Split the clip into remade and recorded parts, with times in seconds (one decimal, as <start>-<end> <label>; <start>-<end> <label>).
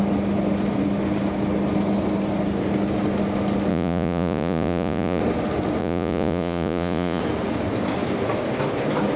0.0-3.7 recorded; 3.7-5.2 remade; 5.2-5.8 recorded; 5.8-7.2 remade; 7.2-9.2 recorded